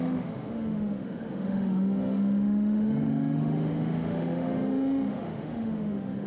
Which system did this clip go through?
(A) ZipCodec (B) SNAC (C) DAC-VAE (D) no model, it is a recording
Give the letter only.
C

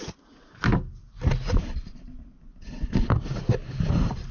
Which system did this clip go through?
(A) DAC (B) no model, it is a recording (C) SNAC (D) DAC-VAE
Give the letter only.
B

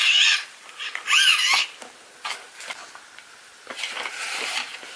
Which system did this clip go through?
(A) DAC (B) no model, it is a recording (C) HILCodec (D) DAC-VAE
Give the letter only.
B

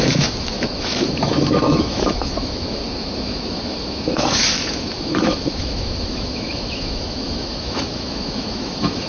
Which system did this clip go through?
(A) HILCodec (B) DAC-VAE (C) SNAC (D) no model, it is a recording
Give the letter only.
B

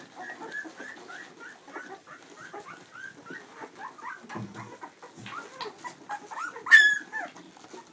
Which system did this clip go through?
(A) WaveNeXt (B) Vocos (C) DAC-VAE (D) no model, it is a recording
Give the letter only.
D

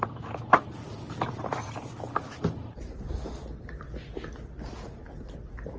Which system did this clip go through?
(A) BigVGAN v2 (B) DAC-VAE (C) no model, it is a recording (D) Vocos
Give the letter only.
C